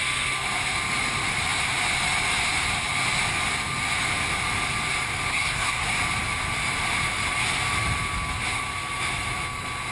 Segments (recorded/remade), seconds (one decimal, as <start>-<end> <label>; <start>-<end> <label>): 0.0-5.3 recorded; 5.3-6.0 remade; 6.0-9.9 recorded